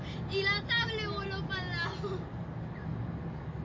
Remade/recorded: recorded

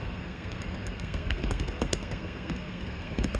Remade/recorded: remade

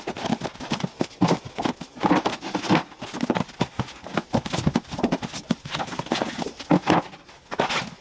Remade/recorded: recorded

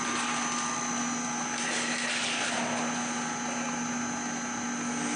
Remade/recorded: recorded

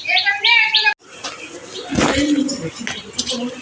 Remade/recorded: recorded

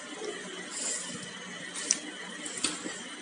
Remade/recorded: recorded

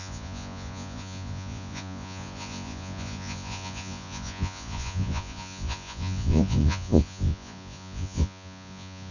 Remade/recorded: remade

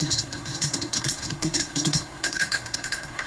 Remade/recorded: remade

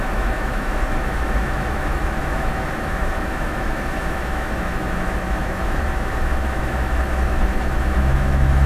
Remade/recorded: remade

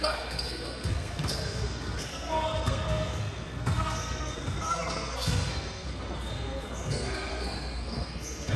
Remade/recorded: remade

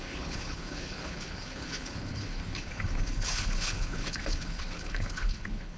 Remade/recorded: remade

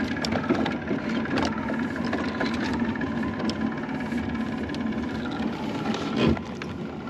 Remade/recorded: recorded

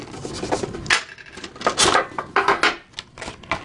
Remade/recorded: recorded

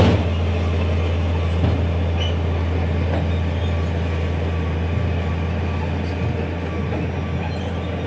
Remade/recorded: recorded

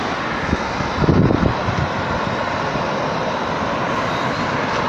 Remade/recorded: recorded